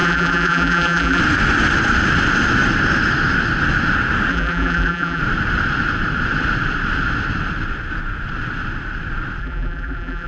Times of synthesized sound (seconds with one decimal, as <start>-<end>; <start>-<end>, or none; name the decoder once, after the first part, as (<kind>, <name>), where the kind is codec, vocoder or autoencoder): 0.0-1.2 (vocoder, BigVGAN v2); 4.3-5.2; 9.4-10.3